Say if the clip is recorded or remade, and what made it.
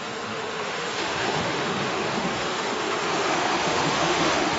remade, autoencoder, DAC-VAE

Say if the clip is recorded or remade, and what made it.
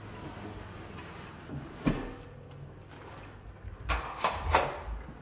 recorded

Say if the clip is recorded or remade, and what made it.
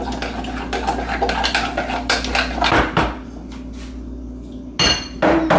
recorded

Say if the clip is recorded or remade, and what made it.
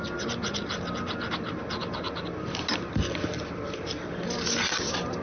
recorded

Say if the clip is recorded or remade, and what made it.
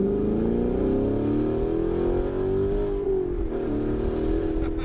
recorded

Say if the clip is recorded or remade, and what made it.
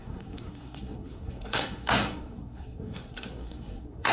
remade, codec, SNAC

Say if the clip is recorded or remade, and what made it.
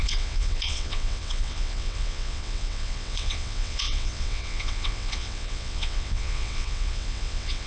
remade, vocoder, WaveNeXt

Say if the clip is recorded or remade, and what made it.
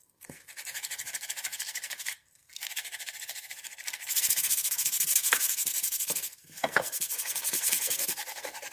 remade, codec, SNAC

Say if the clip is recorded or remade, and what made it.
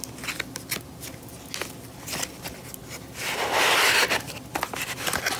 recorded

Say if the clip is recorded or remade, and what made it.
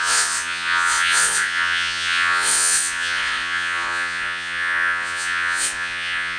remade, vocoder, Vocos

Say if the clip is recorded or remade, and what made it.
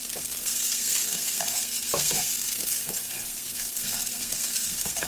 remade, codec, SNAC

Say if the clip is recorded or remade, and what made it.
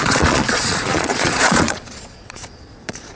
remade, vocoder, Vocos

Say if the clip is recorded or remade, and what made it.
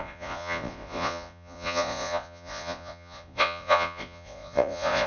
remade, vocoder, Vocos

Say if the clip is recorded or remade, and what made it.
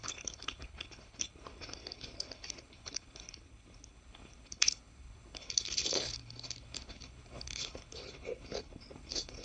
remade, codec, HILCodec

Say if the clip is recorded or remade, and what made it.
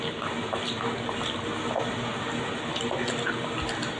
recorded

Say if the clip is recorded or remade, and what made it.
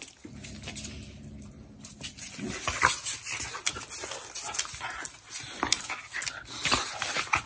recorded